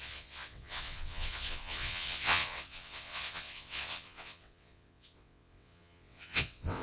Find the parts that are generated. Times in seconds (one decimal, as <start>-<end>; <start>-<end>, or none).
0.0-6.8